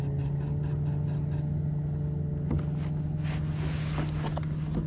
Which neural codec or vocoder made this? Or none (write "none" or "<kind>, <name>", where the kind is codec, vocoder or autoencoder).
none